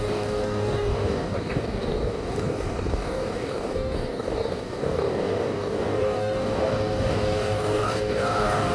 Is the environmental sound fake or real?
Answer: fake